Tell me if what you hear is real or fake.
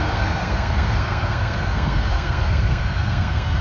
fake